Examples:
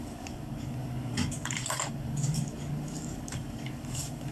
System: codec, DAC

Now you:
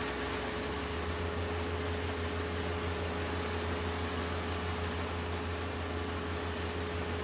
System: none